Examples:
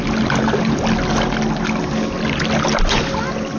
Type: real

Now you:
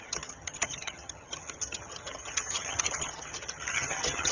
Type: fake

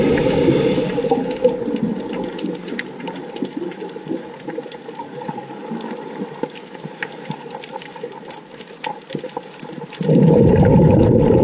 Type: real